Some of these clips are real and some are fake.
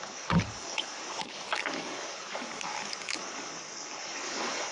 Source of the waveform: fake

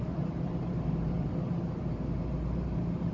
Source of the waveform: fake